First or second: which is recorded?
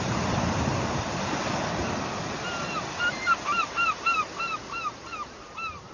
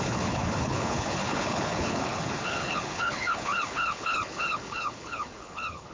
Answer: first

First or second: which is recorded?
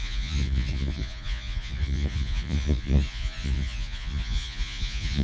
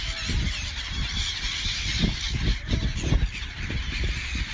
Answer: second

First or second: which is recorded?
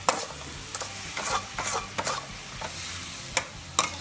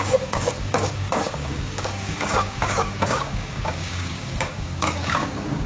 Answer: first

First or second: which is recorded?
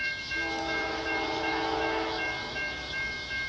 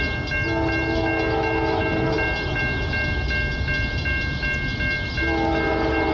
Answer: second